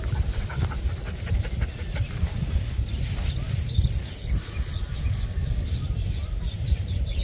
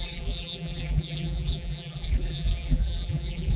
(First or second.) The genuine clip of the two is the first